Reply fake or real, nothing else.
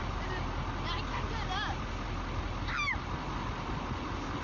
real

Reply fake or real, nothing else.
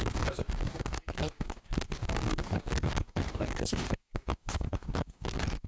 fake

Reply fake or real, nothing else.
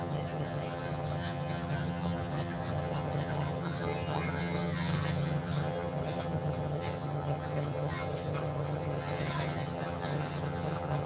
fake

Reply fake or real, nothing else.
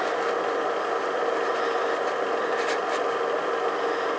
real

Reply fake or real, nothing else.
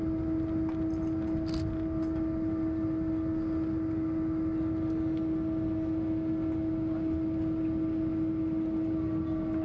real